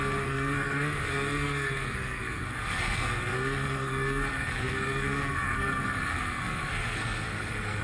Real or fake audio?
fake